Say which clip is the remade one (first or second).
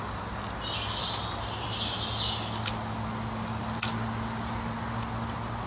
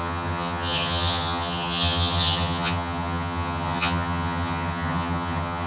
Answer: second